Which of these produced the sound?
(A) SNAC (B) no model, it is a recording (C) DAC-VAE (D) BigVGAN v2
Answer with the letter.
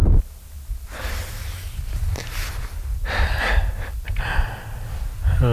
B